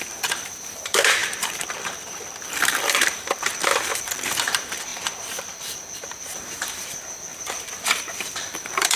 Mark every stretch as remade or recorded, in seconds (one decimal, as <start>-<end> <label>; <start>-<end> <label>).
0.0-4.9 remade; 4.9-5.4 recorded; 5.4-9.0 remade